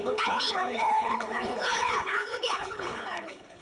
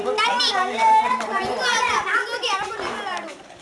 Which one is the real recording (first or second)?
second